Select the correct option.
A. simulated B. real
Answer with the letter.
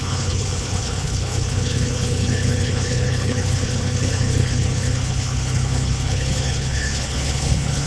A